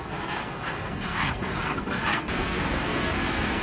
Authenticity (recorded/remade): remade